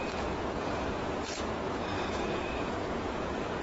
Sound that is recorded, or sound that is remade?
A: remade